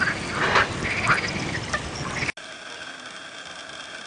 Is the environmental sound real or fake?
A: real